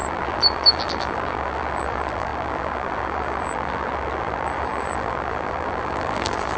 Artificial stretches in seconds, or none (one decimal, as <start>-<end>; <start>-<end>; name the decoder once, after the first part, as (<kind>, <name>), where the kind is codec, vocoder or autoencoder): 0.0-6.6 (vocoder, BigVGAN v2)